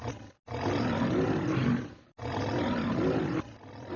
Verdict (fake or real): real